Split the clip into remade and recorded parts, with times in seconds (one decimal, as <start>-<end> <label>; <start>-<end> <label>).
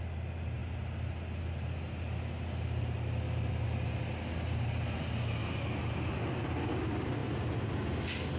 0.0-8.4 recorded